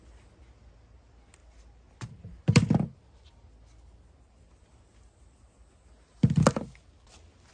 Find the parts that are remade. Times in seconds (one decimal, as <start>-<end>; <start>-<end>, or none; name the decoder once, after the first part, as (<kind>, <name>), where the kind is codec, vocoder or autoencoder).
none